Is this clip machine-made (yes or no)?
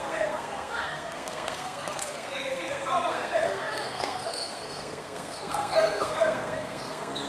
yes